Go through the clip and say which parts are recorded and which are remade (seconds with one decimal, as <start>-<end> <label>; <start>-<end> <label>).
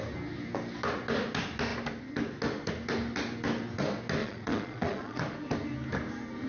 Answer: 0.0-4.2 recorded; 4.2-5.2 remade; 5.2-6.5 recorded